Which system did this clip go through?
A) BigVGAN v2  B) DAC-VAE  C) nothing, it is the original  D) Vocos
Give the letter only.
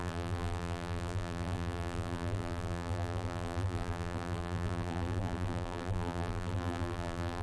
A